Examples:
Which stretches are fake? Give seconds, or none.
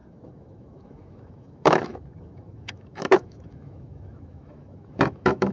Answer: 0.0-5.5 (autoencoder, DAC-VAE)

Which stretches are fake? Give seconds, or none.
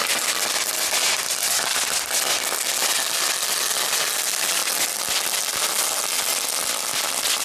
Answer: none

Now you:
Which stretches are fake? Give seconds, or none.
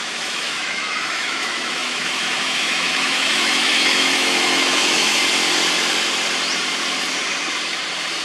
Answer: 0.0-5.2 (autoencoder, DAC-VAE)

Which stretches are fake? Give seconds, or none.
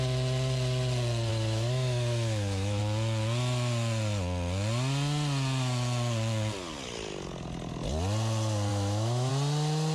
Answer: 1.3-2.8 (autoencoder, DAC-VAE); 8.7-9.3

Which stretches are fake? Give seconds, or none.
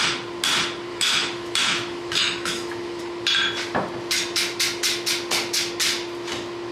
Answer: 0.9-3.0 (autoencoder, DAC-VAE)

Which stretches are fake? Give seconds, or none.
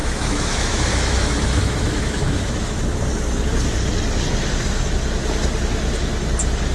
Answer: 0.0-2.8 (autoencoder, DAC-VAE)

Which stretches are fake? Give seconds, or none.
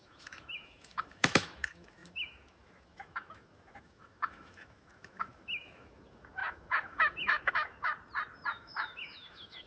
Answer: 0.0-7.9 (autoencoder, DAC-VAE); 8.5-9.7